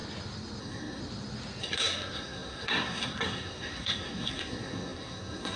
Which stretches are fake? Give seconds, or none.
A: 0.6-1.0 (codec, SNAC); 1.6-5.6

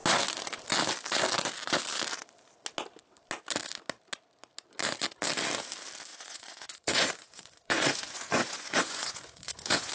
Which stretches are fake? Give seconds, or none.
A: 6.1-9.9 (vocoder, Vocos)

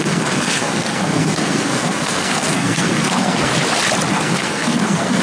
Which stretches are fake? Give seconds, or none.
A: 0.0-3.5 (codec, SNAC); 4.1-5.2

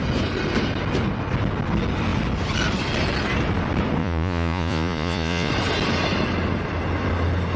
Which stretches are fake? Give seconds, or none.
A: 4.0-5.5 (vocoder, Vocos)

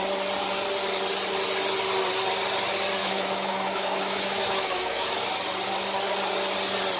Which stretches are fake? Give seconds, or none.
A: 3.0-5.1 (autoencoder, DAC-VAE)

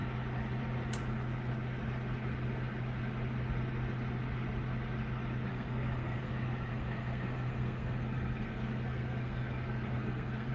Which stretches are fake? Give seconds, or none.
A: 5.5-6.3 (codec, SNAC); 6.7-10.5